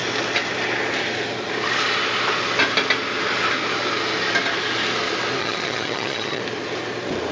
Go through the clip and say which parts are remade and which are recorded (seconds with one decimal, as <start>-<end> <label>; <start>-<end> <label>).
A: 0.0-5.4 recorded; 5.4-6.4 remade; 6.4-7.3 recorded

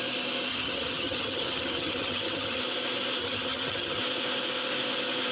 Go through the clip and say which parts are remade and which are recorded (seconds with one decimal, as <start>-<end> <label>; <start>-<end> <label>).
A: 0.0-0.5 recorded; 0.5-2.6 remade; 2.6-3.2 recorded; 3.2-4.0 remade; 4.0-5.3 recorded

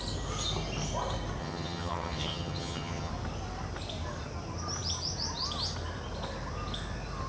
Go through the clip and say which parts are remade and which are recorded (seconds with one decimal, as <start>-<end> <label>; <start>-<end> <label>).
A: 0.0-1.4 recorded; 1.4-3.1 remade; 3.1-7.3 recorded

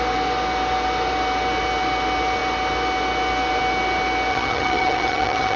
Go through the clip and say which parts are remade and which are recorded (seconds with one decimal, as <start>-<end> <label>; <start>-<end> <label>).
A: 0.0-4.3 recorded; 4.3-5.6 remade